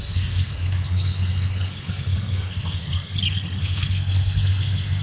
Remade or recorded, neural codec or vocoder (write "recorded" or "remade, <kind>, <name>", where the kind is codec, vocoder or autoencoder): remade, codec, SNAC